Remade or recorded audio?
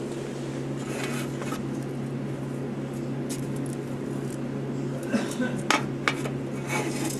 recorded